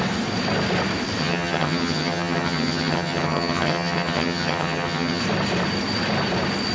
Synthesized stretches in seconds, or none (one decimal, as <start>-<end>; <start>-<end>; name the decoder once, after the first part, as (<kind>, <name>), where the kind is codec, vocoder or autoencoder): 1.2-5.2 (vocoder, HiFi-GAN)